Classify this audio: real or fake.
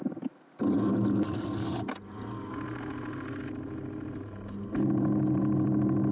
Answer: real